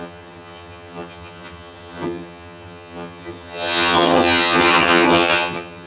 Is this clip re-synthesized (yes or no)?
yes